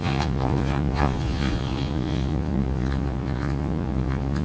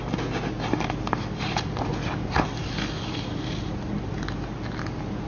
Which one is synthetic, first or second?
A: first